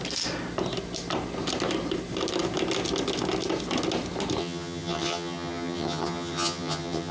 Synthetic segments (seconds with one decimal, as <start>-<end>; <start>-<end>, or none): 4.4-7.1